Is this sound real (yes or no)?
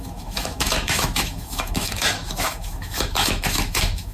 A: no